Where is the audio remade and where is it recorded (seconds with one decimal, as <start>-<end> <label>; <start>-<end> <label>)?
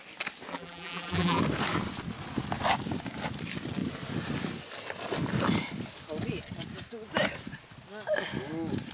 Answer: 0.0-0.5 recorded; 0.5-1.4 remade; 1.4-8.9 recorded